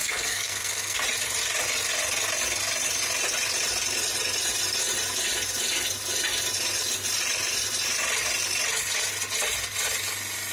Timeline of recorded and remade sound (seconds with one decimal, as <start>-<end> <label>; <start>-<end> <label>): 0.0-1.0 remade; 1.0-10.5 recorded